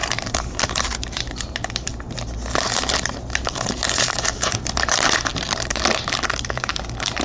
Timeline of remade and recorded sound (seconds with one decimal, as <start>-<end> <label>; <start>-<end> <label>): 0.0-1.9 remade; 1.9-2.9 recorded; 2.9-7.2 remade